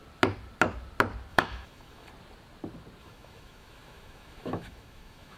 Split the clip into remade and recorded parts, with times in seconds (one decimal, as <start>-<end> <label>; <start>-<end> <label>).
0.0-1.3 recorded; 1.3-2.1 remade; 2.1-3.0 recorded; 3.0-5.4 remade